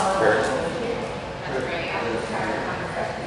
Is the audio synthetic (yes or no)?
no